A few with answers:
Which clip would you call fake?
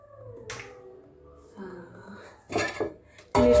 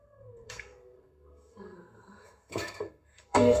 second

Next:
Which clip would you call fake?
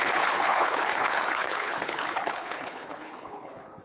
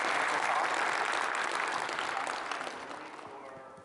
first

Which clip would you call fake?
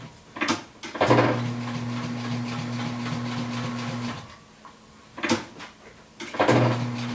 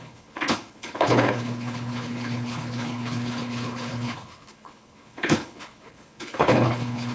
second